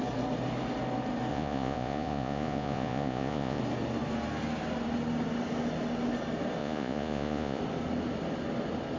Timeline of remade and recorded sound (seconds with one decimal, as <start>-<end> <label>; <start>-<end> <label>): 0.0-1.3 recorded; 1.3-3.6 remade; 3.6-6.6 recorded; 6.6-7.6 remade; 7.6-9.0 recorded